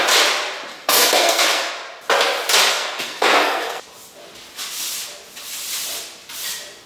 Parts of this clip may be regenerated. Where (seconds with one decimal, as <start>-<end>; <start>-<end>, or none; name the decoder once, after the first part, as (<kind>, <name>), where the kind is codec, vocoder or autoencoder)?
0.7-1.7 (codec, SNAC); 2.7-3.8